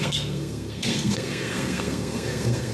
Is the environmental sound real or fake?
fake